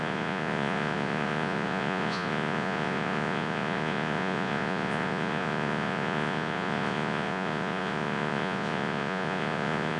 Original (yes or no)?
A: no